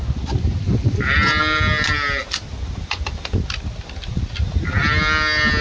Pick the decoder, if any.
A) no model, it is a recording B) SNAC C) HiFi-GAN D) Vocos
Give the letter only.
A